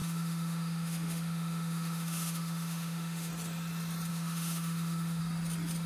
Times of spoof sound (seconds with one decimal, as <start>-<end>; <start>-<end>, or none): 0.0-3.3; 4.1-5.2